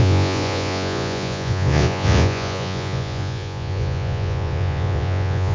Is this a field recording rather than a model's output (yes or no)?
no